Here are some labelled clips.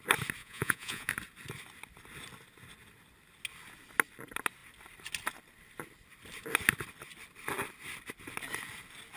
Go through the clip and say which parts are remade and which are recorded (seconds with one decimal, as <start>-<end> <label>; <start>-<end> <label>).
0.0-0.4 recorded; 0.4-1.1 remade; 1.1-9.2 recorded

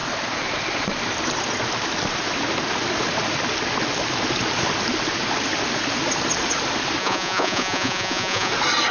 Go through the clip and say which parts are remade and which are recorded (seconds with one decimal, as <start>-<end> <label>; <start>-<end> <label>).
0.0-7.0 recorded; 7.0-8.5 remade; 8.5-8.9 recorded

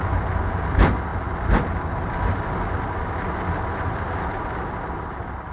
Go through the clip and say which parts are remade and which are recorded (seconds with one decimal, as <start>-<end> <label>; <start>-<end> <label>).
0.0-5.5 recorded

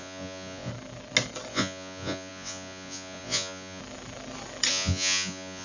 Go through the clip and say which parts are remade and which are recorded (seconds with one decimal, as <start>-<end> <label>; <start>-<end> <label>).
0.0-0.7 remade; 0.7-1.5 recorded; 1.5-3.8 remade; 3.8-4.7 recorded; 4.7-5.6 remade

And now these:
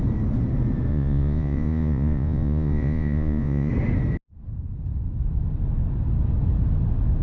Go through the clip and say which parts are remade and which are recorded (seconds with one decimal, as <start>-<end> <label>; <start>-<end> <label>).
0.0-0.9 recorded; 0.9-3.7 remade; 3.7-7.2 recorded

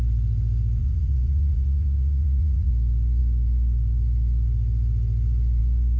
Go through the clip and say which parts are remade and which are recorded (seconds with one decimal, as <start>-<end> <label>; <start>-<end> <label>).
0.0-0.8 recorded; 0.8-2.7 remade; 2.7-6.0 recorded

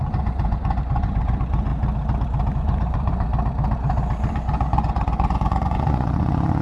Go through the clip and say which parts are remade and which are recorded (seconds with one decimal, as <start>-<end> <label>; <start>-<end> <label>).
0.0-1.7 remade; 1.7-2.5 recorded; 2.5-3.3 remade; 3.3-4.3 recorded; 4.3-6.6 remade